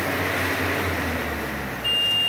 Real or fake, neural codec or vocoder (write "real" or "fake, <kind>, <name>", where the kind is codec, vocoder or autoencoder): real